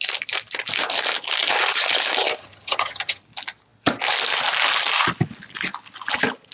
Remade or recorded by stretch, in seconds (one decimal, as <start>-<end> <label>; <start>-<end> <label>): 0.0-2.4 recorded; 2.4-3.2 remade; 3.2-6.5 recorded